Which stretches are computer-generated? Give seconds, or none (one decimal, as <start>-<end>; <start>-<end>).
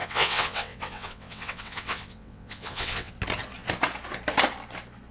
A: 0.0-3.1